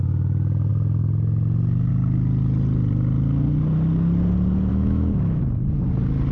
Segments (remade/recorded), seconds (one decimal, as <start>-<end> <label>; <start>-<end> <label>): 0.0-4.7 recorded; 4.7-5.4 remade; 5.4-6.3 recorded